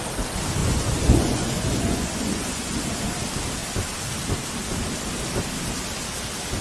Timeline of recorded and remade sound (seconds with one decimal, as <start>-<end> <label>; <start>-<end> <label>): 0.0-0.6 recorded; 0.6-2.8 remade; 2.8-6.6 recorded